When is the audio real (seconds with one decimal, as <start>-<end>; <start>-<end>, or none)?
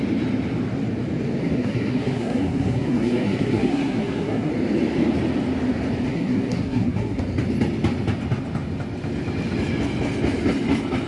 0.0-1.4; 4.5-6.1; 7.2-11.1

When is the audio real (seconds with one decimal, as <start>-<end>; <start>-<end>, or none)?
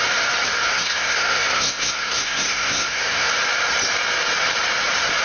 0.0-0.7; 3.3-5.2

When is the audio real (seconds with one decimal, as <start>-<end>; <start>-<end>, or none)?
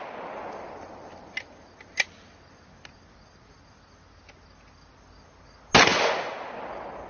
0.0-7.1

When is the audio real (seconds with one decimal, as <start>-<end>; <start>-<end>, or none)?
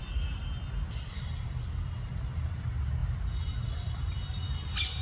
0.0-5.0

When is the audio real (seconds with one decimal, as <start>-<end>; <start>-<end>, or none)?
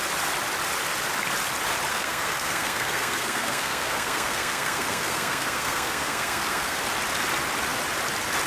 0.0-1.9; 6.8-8.5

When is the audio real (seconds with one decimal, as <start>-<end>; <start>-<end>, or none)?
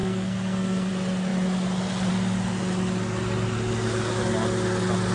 0.9-5.1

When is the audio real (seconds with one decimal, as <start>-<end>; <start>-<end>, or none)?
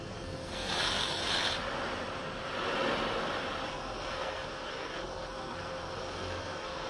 1.2-3.7